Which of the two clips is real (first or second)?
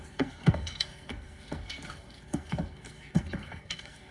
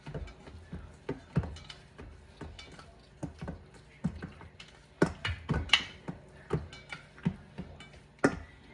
second